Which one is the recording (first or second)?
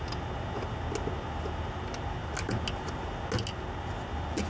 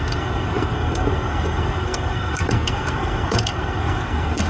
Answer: first